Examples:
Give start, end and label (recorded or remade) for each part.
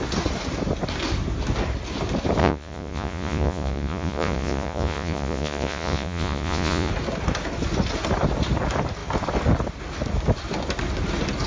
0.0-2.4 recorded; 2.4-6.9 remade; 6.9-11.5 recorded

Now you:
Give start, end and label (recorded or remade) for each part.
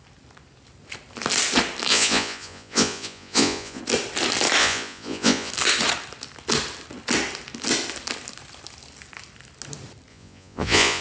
0.0-1.9 recorded; 1.9-3.8 remade; 3.8-4.6 recorded; 4.6-5.5 remade; 5.5-10.1 recorded; 10.1-11.0 remade